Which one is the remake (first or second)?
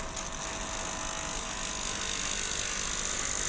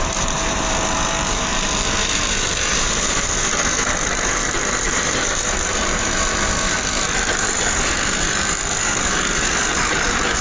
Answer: second